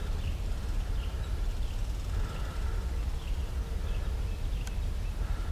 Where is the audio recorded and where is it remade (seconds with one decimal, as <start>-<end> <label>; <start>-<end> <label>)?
0.0-1.8 remade; 1.8-5.1 recorded; 5.1-5.5 remade